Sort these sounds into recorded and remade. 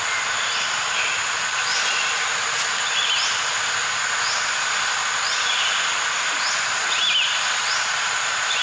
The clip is recorded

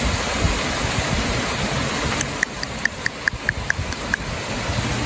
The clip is recorded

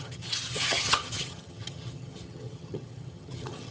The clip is remade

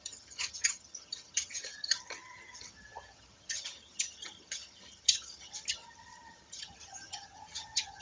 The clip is remade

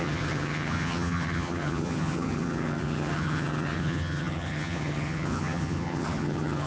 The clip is remade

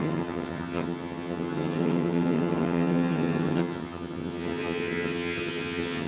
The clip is remade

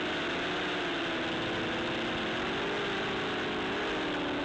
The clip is recorded